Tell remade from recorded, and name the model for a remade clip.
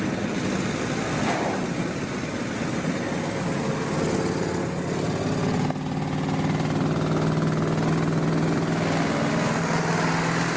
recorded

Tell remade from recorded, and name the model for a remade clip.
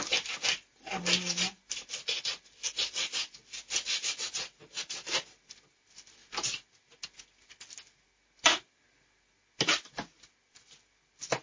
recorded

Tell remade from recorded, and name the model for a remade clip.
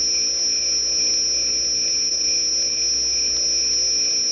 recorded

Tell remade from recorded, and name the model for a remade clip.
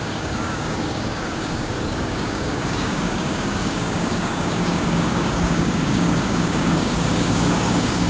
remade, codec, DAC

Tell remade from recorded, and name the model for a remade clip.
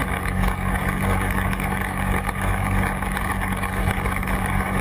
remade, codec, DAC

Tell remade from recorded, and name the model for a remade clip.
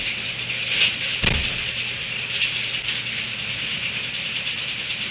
recorded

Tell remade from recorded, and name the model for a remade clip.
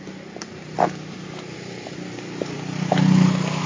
recorded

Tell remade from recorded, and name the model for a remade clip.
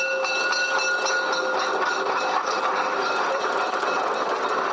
recorded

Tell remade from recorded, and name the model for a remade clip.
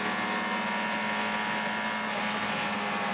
recorded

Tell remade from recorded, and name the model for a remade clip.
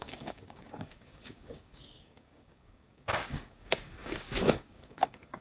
remade, codec, DAC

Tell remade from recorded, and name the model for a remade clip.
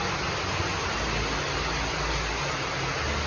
recorded